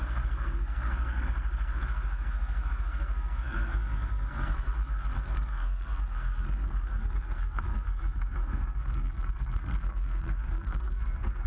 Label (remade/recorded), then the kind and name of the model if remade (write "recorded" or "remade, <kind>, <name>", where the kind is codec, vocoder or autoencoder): remade, codec, SNAC